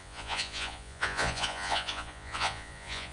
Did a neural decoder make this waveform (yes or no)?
yes